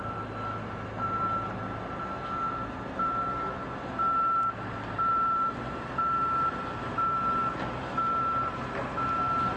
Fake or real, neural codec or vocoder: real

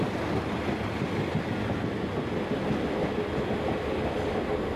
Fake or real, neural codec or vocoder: real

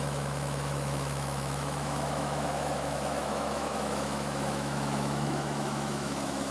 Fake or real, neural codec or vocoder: fake, autoencoder, DAC-VAE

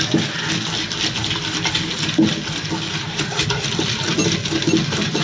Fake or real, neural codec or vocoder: real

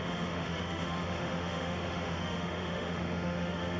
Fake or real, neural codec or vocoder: fake, autoencoder, DAC-VAE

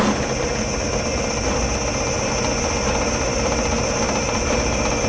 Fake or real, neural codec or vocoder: real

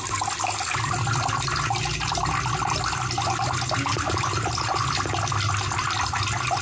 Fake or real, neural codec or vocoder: real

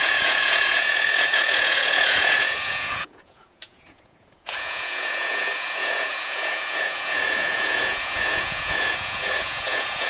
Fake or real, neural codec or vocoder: fake, vocoder, Vocos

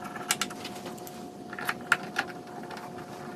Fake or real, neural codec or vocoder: real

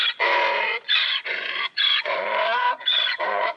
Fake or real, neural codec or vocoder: fake, vocoder, Vocos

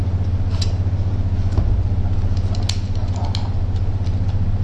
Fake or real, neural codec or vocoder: real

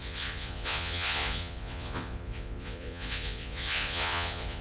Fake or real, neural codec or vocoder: fake, vocoder, Vocos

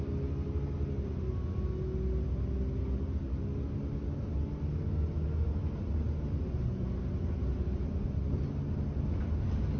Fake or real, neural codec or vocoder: real